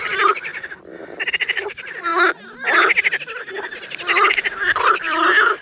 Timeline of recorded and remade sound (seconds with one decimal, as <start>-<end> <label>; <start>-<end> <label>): 0.0-0.5 remade; 0.5-1.3 recorded; 1.3-2.1 remade; 2.1-4.3 recorded; 4.3-5.6 remade